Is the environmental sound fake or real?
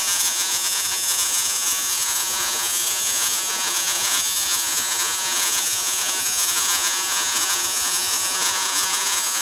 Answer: fake